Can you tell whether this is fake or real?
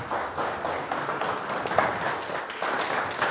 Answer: real